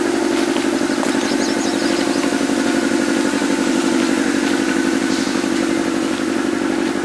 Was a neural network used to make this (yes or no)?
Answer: no